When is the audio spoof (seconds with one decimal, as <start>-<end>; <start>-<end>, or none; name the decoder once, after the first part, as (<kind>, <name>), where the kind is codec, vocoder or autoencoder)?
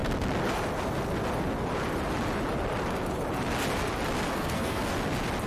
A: 4.3-4.9 (codec, SNAC)